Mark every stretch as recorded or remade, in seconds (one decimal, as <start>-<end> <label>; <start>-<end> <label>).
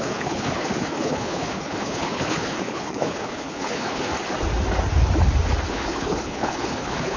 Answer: 0.0-4.1 remade; 4.1-5.7 recorded; 5.7-7.2 remade